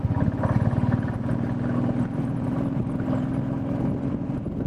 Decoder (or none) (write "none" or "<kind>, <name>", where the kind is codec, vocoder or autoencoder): none